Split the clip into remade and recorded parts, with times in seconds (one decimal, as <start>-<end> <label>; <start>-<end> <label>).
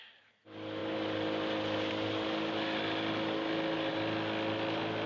0.0-5.1 recorded